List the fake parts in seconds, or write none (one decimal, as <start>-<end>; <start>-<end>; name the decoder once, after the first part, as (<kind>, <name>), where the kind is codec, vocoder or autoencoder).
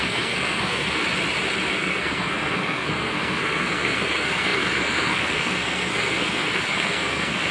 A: 0.0-1.0 (codec, SNAC); 1.7-7.5